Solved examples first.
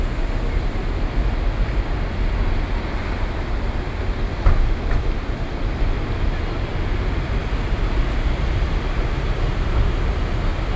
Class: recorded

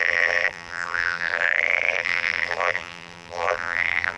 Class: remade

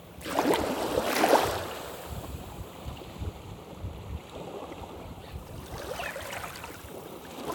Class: remade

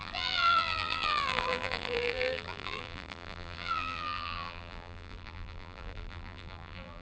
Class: remade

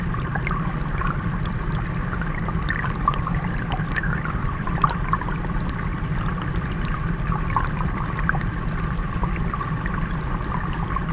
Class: recorded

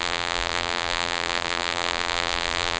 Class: remade